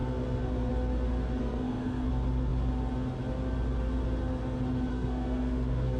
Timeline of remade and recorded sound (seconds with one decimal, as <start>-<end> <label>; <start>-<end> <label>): 0.0-0.7 remade; 0.7-1.4 recorded; 1.4-2.1 remade; 2.1-4.9 recorded; 4.9-6.0 remade